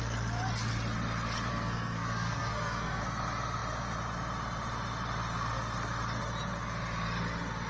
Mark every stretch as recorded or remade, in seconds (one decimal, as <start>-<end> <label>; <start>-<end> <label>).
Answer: 0.0-1.5 recorded; 1.5-3.0 remade; 3.0-7.7 recorded